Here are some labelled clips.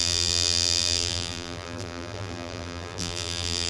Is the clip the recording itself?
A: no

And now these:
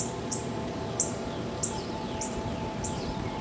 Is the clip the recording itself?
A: no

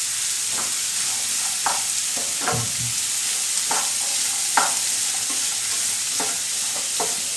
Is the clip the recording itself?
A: yes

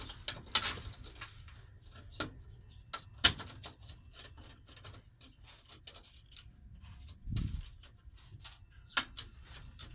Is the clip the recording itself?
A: yes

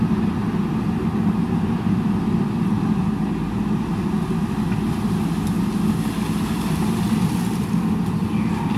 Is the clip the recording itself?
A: yes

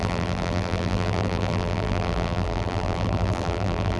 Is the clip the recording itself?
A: no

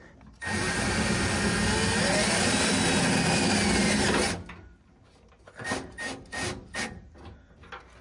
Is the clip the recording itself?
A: yes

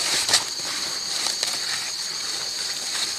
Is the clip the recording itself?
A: no